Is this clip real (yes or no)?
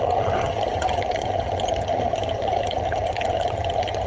no